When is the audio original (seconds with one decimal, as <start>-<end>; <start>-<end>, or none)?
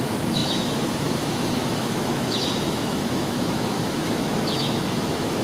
none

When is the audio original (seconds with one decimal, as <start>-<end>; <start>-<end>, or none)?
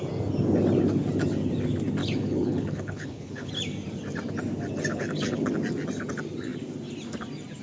0.0-2.0; 3.5-4.9; 5.5-7.6